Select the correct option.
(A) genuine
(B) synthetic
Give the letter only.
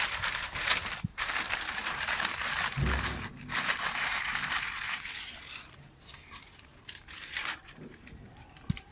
B